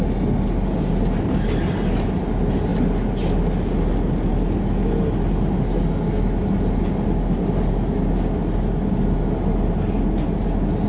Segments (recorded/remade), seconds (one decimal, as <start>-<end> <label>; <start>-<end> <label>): 0.0-10.9 recorded